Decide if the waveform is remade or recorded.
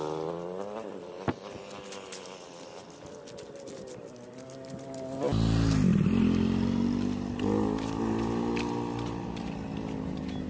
recorded